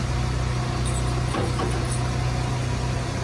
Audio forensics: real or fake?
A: real